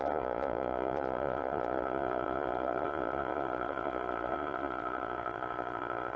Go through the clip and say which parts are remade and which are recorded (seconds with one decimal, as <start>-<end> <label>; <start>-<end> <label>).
0.0-6.2 remade